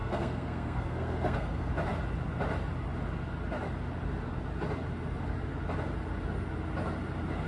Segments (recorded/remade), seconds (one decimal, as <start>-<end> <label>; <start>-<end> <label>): 0.0-1.7 remade; 1.7-7.5 recorded

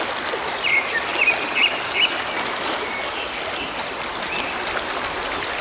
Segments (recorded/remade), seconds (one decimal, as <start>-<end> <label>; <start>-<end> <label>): 0.0-5.6 recorded

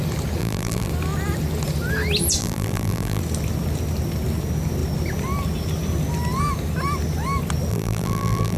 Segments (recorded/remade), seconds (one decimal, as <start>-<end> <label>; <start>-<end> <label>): 0.0-0.4 recorded; 0.4-0.9 remade; 0.9-2.4 recorded; 2.4-3.2 remade; 3.2-7.7 recorded; 7.7-8.6 remade

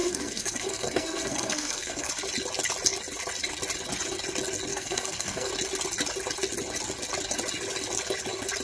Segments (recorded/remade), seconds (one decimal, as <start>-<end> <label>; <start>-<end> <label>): 0.0-2.1 remade; 2.1-4.7 recorded; 4.7-5.5 remade; 5.5-8.6 recorded

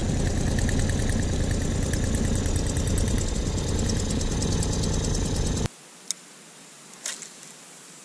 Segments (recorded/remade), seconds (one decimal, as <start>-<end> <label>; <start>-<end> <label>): 0.0-8.0 recorded

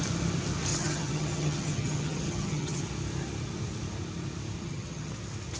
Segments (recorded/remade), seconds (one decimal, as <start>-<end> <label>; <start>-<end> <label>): 0.0-0.7 recorded; 0.7-2.8 remade; 2.8-4.6 recorded; 4.6-5.1 remade; 5.1-5.6 recorded

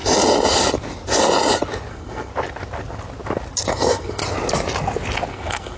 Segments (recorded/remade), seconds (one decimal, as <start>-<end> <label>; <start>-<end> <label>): 0.0-1.9 recorded; 1.9-2.3 remade; 2.3-3.7 recorded; 3.7-4.2 remade; 4.2-5.3 recorded; 5.3-5.8 remade